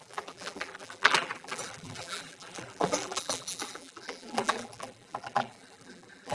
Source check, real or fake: fake